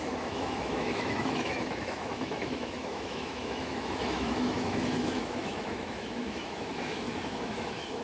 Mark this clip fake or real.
fake